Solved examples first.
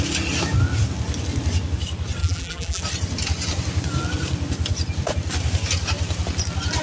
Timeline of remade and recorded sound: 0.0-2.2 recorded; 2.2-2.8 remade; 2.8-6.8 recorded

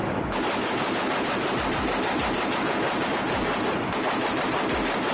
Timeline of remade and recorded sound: 0.0-5.1 recorded

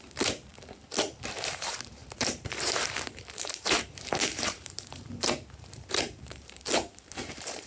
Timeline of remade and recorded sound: 0.0-0.5 remade; 0.5-1.3 recorded; 1.3-7.7 remade